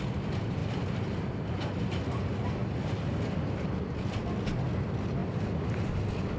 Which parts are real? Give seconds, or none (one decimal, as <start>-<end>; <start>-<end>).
0.0-6.4